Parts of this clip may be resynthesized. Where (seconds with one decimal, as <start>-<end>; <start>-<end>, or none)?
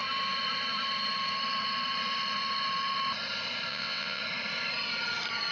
3.7-4.2